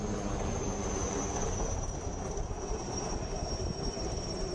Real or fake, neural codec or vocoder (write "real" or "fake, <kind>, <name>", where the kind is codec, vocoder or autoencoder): fake, vocoder, BigVGAN v2